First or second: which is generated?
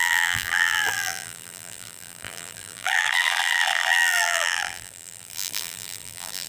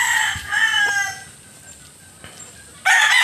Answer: first